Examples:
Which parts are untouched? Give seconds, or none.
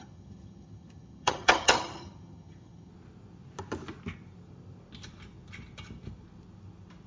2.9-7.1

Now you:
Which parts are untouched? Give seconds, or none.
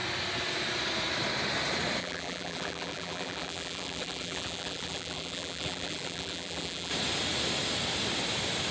0.0-2.0; 6.9-8.7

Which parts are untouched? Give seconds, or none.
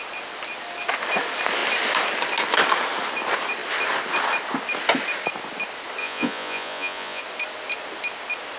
0.0-6.0; 7.2-8.6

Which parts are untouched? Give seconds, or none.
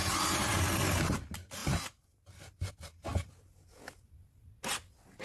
0.0-5.2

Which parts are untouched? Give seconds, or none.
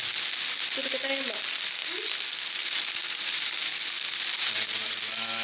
0.0-3.2; 3.7-4.2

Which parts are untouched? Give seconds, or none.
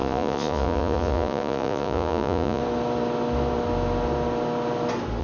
2.6-5.2